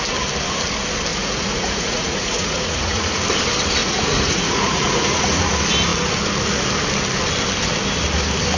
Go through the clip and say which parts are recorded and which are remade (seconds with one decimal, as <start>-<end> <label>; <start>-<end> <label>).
0.0-1.1 recorded; 1.1-3.2 remade; 3.2-3.8 recorded; 3.8-5.5 remade; 5.5-8.6 recorded